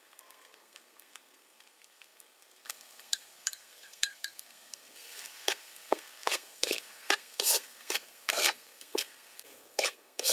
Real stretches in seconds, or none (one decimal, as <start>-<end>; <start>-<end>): none